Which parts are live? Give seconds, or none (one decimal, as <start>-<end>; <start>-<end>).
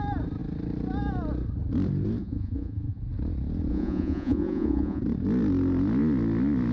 0.0-2.2; 3.0-3.7; 5.0-6.7